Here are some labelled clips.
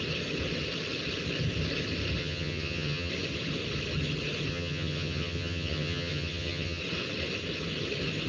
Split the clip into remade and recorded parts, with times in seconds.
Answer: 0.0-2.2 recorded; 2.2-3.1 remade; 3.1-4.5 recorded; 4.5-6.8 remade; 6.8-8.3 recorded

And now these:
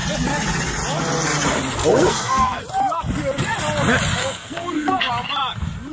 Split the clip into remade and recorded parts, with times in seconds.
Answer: 0.0-1.9 recorded; 1.9-2.6 remade; 2.6-4.2 recorded; 4.2-5.1 remade; 5.1-5.9 recorded

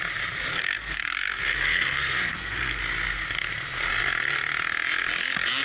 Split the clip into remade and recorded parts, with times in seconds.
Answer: 0.0-0.5 recorded; 0.5-2.8 remade; 2.8-5.6 recorded

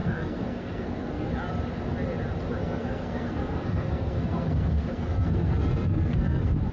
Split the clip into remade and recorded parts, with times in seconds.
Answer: 0.0-1.3 remade; 1.3-2.6 recorded; 2.6-6.7 remade

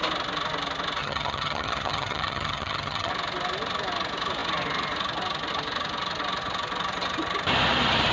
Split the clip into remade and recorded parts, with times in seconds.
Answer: 0.0-1.0 recorded; 1.0-3.1 remade; 3.1-8.1 recorded

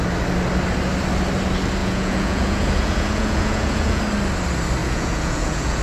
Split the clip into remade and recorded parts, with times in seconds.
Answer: 0.0-1.8 recorded; 1.8-4.0 remade; 4.0-4.8 recorded; 4.8-5.8 remade